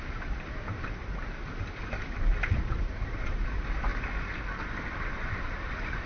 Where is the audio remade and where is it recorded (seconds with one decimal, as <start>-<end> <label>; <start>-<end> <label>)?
0.0-3.9 remade; 3.9-4.9 recorded; 4.9-6.1 remade